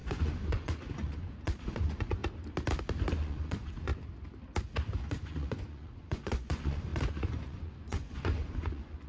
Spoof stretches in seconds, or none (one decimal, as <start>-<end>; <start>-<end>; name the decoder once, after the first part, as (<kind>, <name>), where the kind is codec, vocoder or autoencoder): 0.0-2.2 (vocoder, Vocos); 3.1-3.9; 5.0-9.1